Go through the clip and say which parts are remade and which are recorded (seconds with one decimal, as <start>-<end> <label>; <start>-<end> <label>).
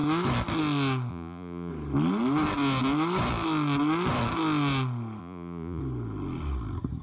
0.0-1.1 recorded; 1.1-1.7 remade; 1.7-5.2 recorded; 5.2-5.8 remade; 5.8-7.0 recorded